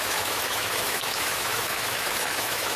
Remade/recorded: remade